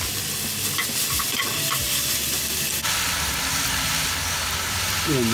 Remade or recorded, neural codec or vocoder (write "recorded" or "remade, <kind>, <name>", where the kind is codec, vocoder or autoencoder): recorded